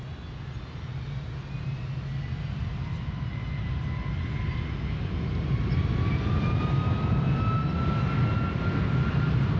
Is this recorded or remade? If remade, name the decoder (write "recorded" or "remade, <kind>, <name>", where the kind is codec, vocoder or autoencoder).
recorded